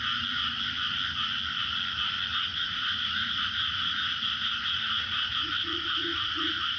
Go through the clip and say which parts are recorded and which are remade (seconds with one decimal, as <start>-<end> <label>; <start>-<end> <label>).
0.0-2.5 recorded; 2.5-6.8 remade